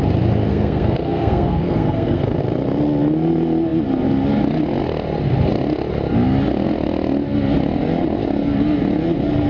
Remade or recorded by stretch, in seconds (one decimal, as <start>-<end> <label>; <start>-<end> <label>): 0.0-0.5 recorded; 0.5-2.4 remade; 2.4-9.5 recorded